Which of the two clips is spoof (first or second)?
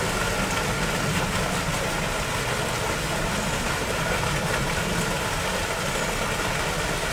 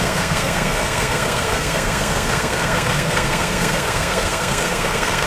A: second